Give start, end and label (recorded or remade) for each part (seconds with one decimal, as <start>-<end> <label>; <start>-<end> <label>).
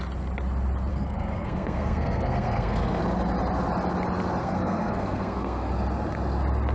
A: 0.0-0.9 recorded; 0.9-3.0 remade; 3.0-4.4 recorded; 4.4-5.7 remade; 5.7-6.7 recorded